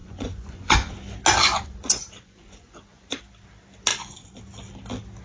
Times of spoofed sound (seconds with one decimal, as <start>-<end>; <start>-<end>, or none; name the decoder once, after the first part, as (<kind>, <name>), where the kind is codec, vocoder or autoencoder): 0.0-0.9 (vocoder, Vocos); 1.4-3.2; 3.9-4.4